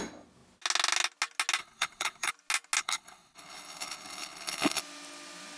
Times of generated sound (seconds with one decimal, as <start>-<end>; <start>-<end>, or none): 1.6-2.3; 2.8-4.8